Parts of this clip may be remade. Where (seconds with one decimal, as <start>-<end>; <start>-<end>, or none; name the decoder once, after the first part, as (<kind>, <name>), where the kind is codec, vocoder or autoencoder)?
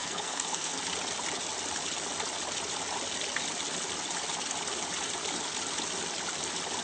0.0-0.8 (codec, SNAC)